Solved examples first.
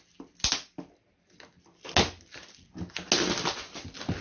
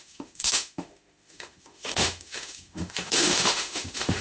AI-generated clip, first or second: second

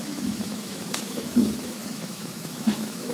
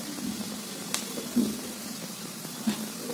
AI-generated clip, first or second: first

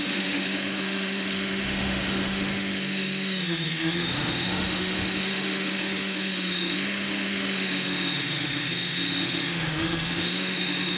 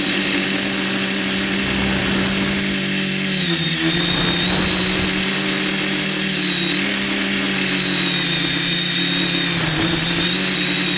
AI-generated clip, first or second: first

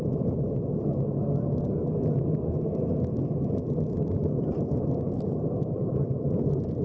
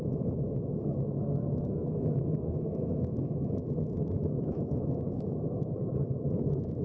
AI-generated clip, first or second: second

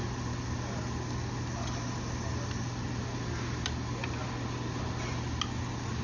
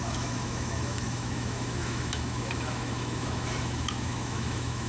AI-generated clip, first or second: second